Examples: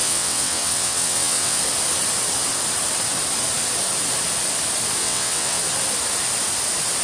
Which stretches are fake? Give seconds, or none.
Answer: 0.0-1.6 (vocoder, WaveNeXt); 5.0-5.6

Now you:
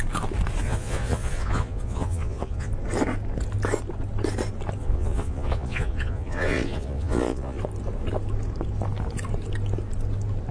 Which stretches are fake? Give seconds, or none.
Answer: 0.6-2.7 (vocoder, Vocos); 4.8-7.6

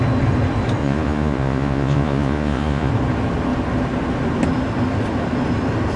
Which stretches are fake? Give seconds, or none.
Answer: 0.8-2.9 (vocoder, Vocos)

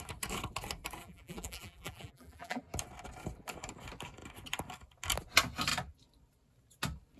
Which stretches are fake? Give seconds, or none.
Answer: 1.0-2.6 (vocoder, BigVGAN v2)

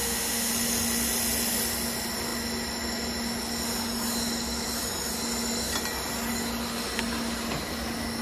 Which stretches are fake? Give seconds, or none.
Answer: 0.0-0.5 (autoencoder, DAC-VAE)

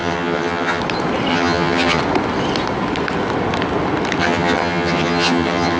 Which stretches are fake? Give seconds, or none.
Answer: 0.0-0.8 (vocoder, HiFi-GAN); 1.3-2.0; 4.2-5.8